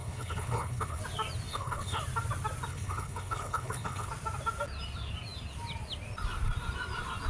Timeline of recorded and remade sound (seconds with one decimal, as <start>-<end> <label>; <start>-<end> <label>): 0.0-1.0 remade; 1.0-1.5 recorded; 1.5-2.0 remade; 2.0-2.7 recorded; 2.7-4.1 remade; 4.1-7.3 recorded